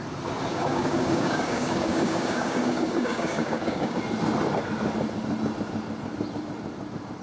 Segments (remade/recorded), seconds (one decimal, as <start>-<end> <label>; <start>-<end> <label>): 0.0-0.5 recorded; 0.5-4.0 remade; 4.0-7.2 recorded